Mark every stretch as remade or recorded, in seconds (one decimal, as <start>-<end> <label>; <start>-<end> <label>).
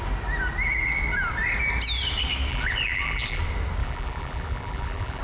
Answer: 0.0-2.5 recorded; 2.5-3.4 remade; 3.4-3.8 recorded; 3.8-5.2 remade